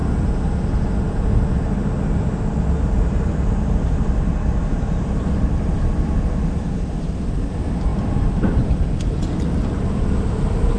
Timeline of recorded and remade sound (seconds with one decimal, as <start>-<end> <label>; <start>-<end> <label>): 0.0-4.9 recorded; 4.9-10.8 remade